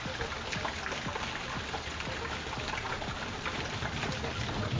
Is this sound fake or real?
real